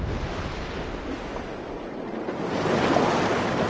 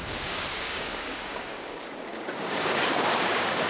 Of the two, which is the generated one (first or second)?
second